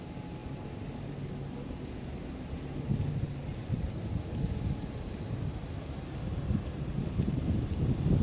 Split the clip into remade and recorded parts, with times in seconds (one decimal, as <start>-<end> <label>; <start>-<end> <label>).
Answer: 0.0-8.2 recorded